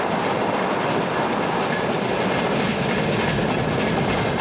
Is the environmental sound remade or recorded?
recorded